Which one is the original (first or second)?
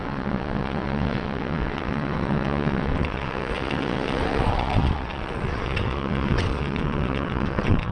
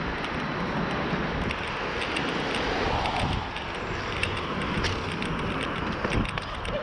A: second